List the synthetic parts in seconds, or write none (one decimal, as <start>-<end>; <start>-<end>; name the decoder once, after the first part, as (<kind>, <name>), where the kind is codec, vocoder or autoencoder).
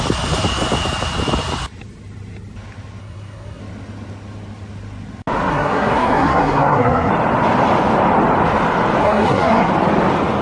3.0-3.6 (codec, SNAC); 5.5-7.1; 9.0-9.7